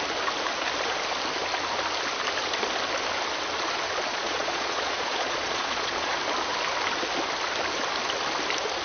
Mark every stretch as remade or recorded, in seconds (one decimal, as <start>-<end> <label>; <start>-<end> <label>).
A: 0.0-4.1 recorded; 4.1-6.2 remade; 6.2-8.8 recorded